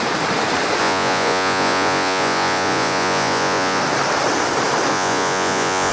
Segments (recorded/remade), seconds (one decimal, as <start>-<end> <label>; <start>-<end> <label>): 0.0-0.8 recorded; 0.8-3.8 remade; 3.8-4.9 recorded; 4.9-5.9 remade